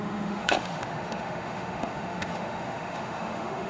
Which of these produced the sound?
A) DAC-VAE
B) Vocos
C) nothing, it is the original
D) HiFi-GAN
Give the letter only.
A